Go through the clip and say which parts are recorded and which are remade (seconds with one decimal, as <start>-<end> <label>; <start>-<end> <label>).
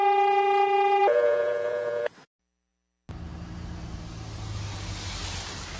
0.0-1.0 recorded; 1.0-2.0 remade; 2.0-5.8 recorded